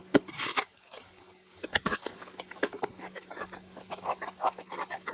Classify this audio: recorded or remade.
remade